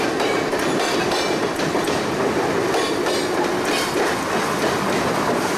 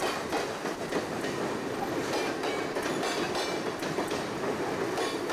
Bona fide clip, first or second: second